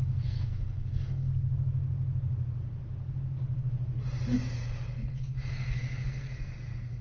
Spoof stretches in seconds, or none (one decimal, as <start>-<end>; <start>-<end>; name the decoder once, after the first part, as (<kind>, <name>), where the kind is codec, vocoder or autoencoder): 0.0-1.3 (codec, SNAC); 5.5-7.0